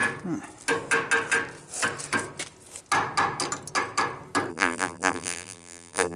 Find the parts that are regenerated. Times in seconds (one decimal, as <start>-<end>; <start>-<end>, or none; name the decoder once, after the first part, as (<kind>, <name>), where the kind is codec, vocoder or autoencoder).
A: 4.5-6.2 (vocoder, BigVGAN v2)